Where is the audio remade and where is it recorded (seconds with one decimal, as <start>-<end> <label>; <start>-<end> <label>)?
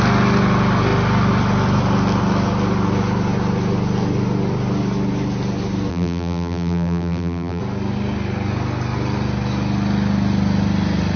0.0-5.9 recorded; 5.9-7.6 remade; 7.6-11.2 recorded